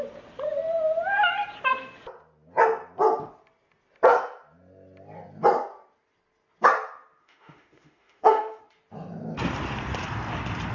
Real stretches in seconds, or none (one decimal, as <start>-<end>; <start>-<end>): 0.0-7.2; 8.6-10.7